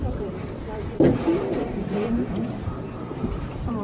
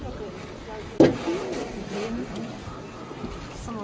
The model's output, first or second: first